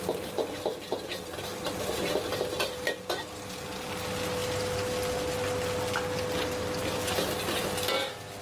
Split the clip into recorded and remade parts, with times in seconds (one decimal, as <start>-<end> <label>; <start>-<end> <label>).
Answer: 0.0-8.4 recorded